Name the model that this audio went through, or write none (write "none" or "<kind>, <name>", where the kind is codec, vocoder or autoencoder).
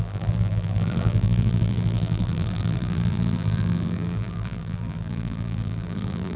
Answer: vocoder, BigVGAN v2